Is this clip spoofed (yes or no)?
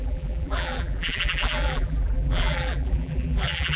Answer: yes